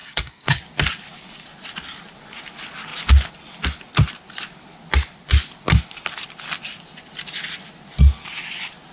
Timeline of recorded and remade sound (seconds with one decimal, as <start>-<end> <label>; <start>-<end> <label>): 0.0-0.6 remade; 0.6-8.9 recorded